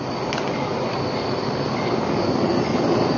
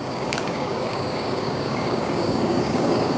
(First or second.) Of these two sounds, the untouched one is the first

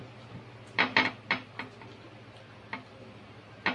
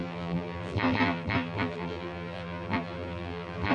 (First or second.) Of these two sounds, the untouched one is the first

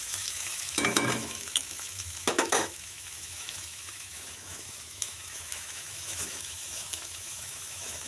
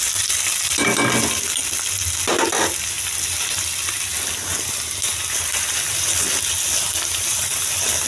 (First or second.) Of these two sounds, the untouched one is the second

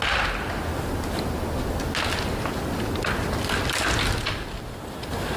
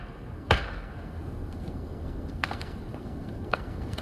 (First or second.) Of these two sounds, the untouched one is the first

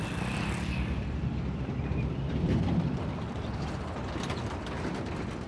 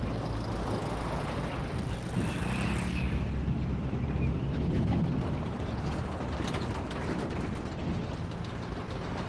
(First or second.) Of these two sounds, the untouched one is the second